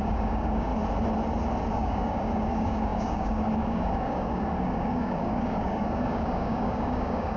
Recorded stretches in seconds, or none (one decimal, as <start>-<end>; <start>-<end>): 0.7-1.7